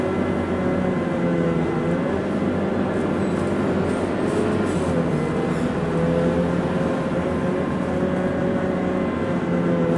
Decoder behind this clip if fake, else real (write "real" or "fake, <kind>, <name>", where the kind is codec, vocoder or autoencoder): real